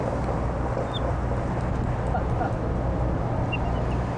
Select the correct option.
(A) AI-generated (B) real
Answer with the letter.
B